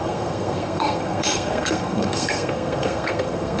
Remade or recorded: remade